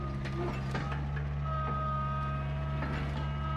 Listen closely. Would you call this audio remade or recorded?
recorded